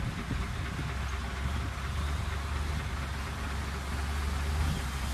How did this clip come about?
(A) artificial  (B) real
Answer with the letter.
B